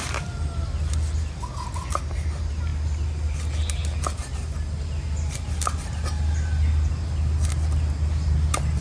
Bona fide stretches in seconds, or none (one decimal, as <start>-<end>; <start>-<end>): 0.0-8.8